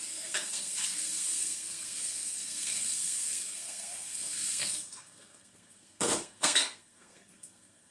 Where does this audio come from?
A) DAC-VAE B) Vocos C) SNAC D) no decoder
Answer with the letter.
C